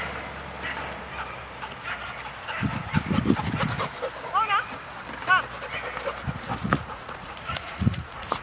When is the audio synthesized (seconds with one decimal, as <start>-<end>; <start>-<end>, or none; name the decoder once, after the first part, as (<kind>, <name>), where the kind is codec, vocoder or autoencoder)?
6.6-8.4 (vocoder, Vocos)

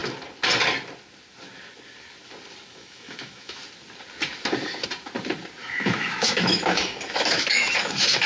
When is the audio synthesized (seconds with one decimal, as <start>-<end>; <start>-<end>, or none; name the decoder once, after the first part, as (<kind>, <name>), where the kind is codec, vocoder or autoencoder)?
2.7-3.6 (autoencoder, DAC-VAE); 5.6-8.3

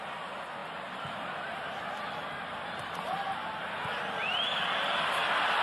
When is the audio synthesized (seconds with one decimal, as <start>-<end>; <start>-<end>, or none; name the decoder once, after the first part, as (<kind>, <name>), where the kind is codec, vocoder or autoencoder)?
none